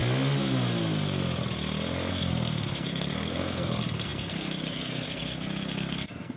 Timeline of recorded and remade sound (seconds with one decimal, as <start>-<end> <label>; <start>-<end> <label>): 0.0-2.1 recorded; 2.1-6.4 remade